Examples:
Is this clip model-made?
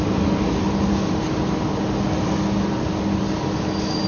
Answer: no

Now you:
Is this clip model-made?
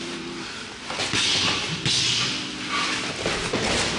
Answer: no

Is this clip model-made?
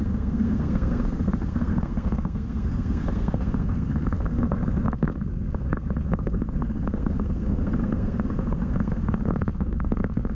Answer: yes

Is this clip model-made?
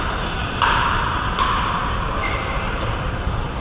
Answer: yes